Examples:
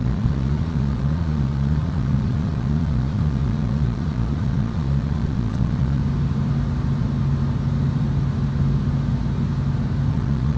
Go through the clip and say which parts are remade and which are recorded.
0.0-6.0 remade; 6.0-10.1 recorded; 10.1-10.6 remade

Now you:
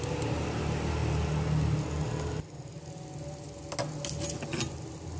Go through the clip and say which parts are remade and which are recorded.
0.0-5.2 recorded

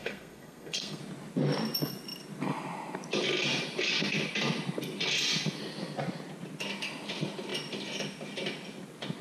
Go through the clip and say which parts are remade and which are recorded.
0.0-1.0 remade; 1.0-9.2 recorded

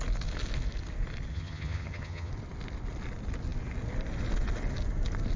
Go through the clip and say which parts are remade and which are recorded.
0.0-1.3 recorded; 1.3-2.3 remade; 2.3-5.4 recorded

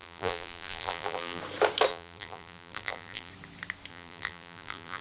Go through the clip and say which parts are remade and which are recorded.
0.0-1.4 remade; 1.4-1.9 recorded; 1.9-3.3 remade; 3.3-3.9 recorded; 3.9-5.0 remade